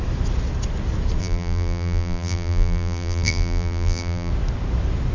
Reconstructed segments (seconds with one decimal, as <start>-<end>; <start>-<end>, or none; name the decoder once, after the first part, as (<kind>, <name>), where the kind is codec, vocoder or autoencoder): 1.2-4.3 (vocoder, BigVGAN v2)